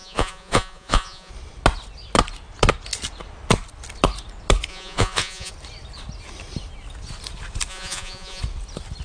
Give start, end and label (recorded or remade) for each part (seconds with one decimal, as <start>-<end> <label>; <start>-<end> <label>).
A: 0.0-1.3 remade; 1.3-4.7 recorded; 4.7-5.5 remade; 5.5-7.7 recorded; 7.7-8.4 remade; 8.4-9.0 recorded